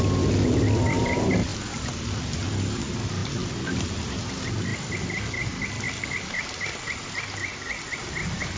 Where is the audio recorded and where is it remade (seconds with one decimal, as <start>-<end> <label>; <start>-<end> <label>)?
0.0-8.6 recorded